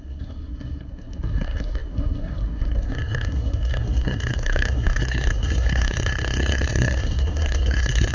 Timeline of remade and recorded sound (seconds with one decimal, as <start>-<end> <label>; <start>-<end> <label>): 0.0-8.1 remade